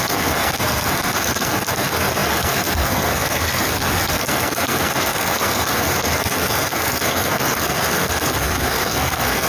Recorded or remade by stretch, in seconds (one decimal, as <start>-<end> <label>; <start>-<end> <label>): 0.0-9.5 remade